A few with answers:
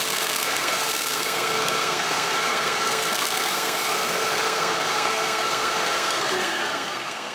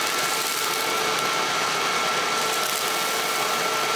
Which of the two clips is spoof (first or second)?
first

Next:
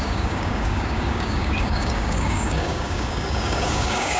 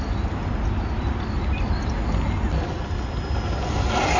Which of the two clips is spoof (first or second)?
first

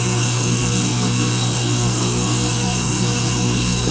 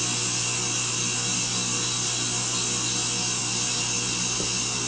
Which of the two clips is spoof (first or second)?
first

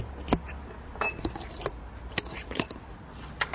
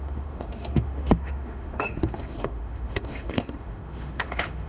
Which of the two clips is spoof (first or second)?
second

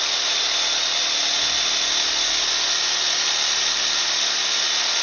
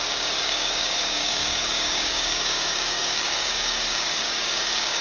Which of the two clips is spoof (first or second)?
second